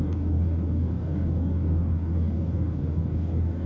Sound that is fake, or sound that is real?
fake